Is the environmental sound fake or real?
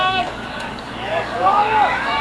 fake